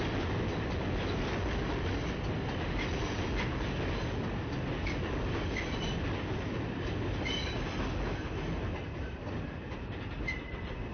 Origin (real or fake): real